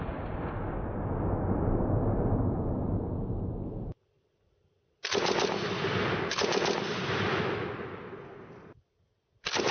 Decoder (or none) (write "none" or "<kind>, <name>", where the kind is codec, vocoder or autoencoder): none